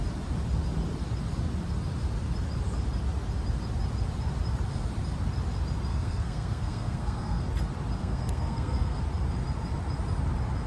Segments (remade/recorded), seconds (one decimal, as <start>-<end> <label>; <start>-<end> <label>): 0.0-5.9 recorded; 5.9-7.4 remade; 7.4-8.0 recorded; 8.0-9.0 remade; 9.0-10.7 recorded

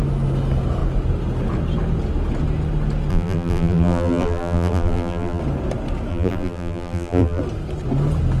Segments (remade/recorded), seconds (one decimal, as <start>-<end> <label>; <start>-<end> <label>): 0.0-3.1 recorded; 3.1-5.4 remade; 5.4-6.1 recorded; 6.1-7.4 remade; 7.4-8.4 recorded

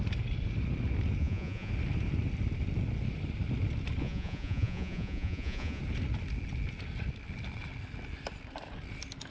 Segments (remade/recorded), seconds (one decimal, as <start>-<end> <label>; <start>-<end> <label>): 0.0-1.2 recorded; 1.2-1.7 remade; 1.7-4.0 recorded; 4.0-5.8 remade; 5.8-9.3 recorded

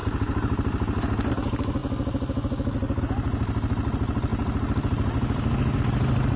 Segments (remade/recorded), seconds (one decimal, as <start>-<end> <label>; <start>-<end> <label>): 0.0-6.4 recorded

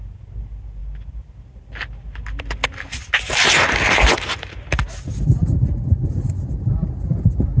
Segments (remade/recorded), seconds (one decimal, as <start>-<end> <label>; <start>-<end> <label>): 0.0-7.6 recorded

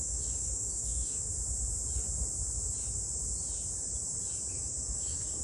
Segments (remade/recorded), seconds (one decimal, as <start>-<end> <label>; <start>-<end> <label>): 0.0-1.3 remade; 1.3-4.5 recorded; 4.5-5.4 remade

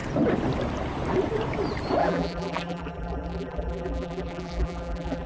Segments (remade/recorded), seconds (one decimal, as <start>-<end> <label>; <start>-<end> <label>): 0.0-2.0 recorded; 2.0-5.3 remade

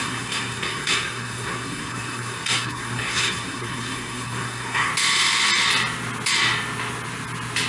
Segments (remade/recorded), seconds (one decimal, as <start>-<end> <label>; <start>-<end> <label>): 0.0-4.9 remade; 4.9-7.7 recorded